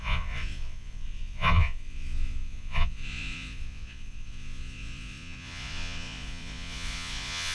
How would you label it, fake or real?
fake